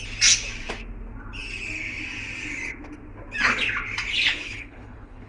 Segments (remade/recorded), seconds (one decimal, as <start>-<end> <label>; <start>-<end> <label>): 0.0-4.3 recorded; 4.3-5.3 remade